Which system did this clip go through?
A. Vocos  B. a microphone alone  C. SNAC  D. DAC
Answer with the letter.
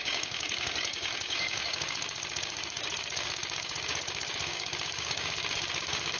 D